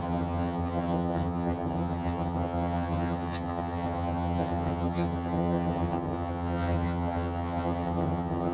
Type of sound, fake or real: fake